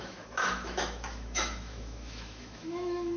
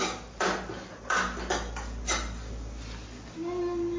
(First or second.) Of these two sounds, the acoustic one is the second